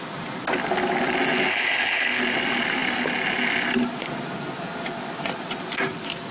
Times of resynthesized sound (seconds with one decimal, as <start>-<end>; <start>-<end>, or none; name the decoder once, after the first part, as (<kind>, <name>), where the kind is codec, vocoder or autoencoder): 1.5-2.2 (codec, HILCodec)